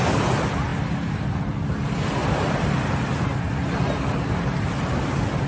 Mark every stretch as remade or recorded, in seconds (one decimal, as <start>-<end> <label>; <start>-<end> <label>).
0.0-5.5 recorded